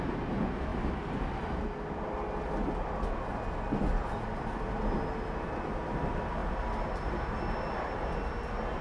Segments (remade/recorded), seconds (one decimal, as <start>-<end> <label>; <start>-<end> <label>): 0.0-8.8 recorded